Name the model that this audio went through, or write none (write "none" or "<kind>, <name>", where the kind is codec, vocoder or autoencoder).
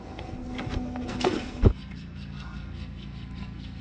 codec, SNAC